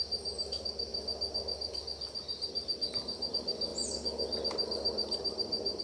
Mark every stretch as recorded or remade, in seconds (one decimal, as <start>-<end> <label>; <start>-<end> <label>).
0.0-5.8 recorded